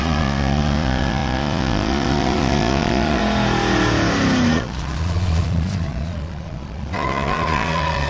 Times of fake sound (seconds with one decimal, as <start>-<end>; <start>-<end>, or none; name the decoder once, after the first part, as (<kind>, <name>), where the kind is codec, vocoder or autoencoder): 0.0-3.2 (vocoder, Vocos); 4.5-8.1